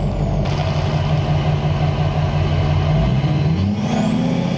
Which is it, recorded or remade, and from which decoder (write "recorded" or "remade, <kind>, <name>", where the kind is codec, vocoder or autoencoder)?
recorded